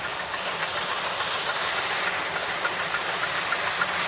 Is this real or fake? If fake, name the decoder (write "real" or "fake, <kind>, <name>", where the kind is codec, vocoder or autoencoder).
real